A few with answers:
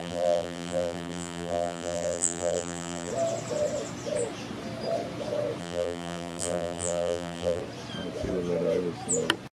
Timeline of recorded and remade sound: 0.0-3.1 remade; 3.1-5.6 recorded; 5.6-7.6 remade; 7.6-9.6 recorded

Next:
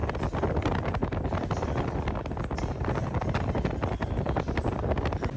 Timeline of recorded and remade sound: 0.0-5.4 recorded

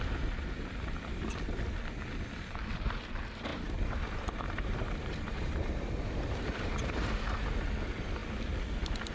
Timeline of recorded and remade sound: 0.0-3.5 recorded; 3.5-7.2 remade; 7.2-9.1 recorded

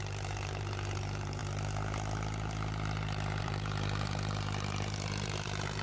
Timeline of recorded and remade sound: 0.0-1.4 remade; 1.4-3.4 recorded; 3.4-5.8 remade

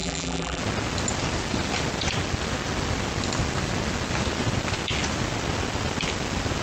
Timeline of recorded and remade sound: 0.0-0.6 remade; 0.6-6.6 recorded

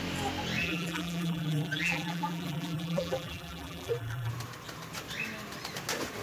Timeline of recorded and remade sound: 0.0-0.6 recorded; 0.6-4.3 remade; 4.3-6.2 recorded